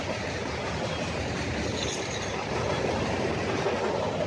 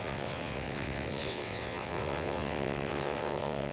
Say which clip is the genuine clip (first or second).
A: first